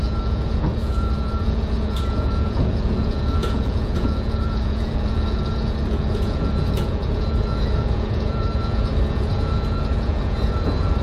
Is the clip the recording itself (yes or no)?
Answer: no